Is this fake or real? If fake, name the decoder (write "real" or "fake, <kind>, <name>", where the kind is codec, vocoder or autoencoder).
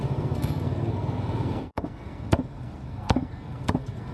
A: fake, codec, SNAC